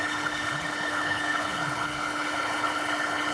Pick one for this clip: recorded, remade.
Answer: remade